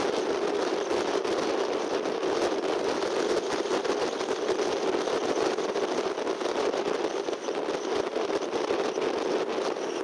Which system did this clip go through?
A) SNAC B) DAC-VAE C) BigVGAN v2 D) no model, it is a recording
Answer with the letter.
D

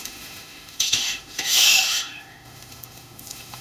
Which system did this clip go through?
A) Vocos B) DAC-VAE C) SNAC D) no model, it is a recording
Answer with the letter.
B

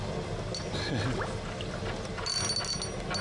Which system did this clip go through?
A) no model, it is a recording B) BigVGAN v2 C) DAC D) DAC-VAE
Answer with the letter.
A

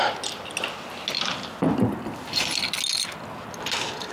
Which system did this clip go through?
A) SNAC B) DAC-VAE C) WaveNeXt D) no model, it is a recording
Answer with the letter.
D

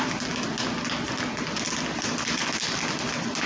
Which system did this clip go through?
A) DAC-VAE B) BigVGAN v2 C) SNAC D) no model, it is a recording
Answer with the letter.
D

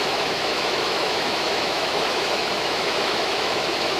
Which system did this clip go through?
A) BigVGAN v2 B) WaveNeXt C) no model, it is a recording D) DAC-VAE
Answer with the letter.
D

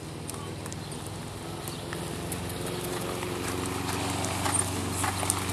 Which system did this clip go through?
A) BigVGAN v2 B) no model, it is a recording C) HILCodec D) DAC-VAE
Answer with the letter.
B